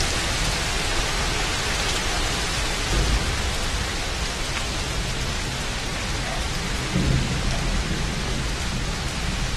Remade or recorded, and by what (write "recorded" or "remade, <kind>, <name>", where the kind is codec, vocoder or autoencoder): recorded